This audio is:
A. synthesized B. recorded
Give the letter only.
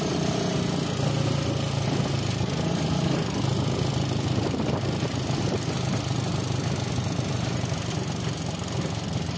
B